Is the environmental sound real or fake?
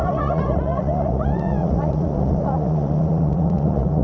fake